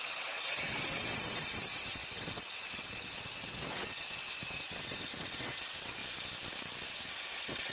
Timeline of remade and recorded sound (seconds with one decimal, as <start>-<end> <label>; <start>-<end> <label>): 0.0-6.0 remade; 6.0-6.9 recorded; 6.9-7.7 remade